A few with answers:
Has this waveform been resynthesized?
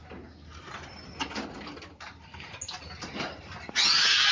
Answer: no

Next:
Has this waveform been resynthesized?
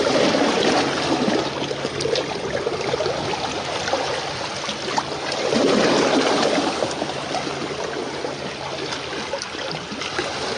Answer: no